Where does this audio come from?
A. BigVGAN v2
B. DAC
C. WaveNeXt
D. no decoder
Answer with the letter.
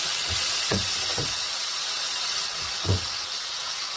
C